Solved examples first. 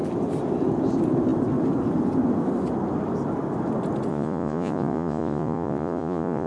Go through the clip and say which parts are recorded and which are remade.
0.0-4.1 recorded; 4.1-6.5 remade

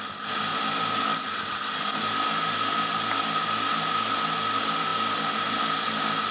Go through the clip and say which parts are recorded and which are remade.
0.0-6.3 recorded

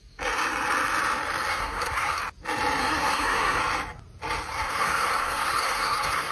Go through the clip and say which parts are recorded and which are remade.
0.0-1.5 recorded; 1.5-2.2 remade; 2.2-2.8 recorded; 2.8-3.6 remade; 3.6-4.5 recorded; 4.5-6.3 remade